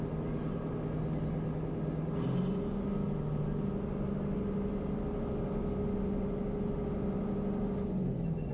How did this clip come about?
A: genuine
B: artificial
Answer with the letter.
A